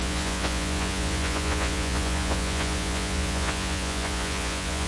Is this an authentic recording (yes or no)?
no